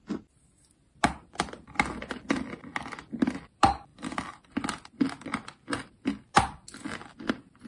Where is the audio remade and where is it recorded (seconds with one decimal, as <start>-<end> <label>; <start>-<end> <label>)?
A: 0.0-7.7 recorded